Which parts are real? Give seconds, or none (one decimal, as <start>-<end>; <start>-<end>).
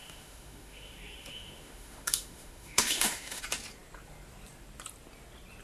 3.4-5.6